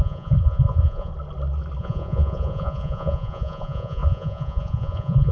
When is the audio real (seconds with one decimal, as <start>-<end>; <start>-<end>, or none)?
1.1-1.8